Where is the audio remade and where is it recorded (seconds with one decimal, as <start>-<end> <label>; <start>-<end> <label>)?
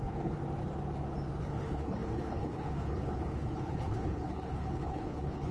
0.0-0.4 remade; 0.4-1.4 recorded; 1.4-5.5 remade